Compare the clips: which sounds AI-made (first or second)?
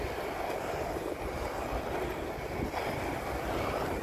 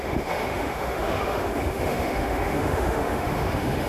second